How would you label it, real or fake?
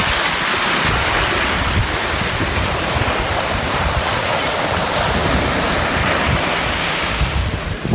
real